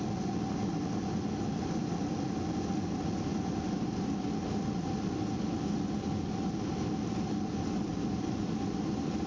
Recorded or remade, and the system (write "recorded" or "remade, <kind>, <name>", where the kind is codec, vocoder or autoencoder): recorded